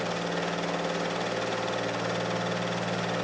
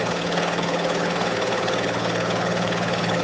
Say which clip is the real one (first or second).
first